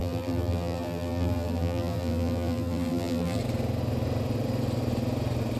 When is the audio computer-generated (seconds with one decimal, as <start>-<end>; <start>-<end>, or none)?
0.0-3.4